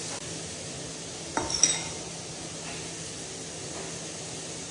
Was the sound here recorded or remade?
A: recorded